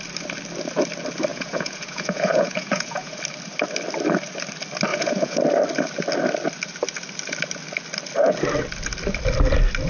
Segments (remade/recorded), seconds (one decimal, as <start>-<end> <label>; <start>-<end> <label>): 0.0-1.3 recorded; 1.3-3.2 remade; 3.2-4.9 recorded; 4.9-5.4 remade; 5.4-9.9 recorded